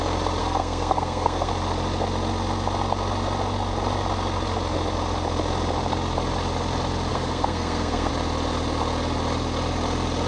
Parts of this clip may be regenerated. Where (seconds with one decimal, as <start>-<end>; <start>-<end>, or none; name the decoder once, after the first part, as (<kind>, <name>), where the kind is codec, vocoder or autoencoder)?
0.4-1.5 (codec, SNAC); 7.1-8.1